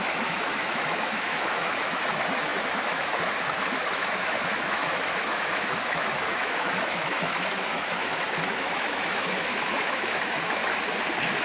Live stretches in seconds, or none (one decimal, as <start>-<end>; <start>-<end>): 10.6-11.4